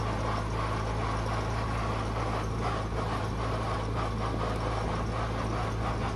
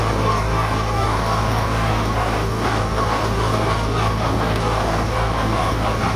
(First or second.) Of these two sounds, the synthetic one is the second